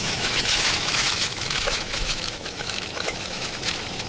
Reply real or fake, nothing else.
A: fake